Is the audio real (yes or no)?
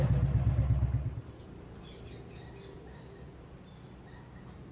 yes